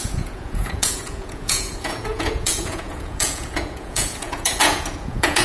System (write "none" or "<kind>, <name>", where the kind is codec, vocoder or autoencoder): vocoder, Vocos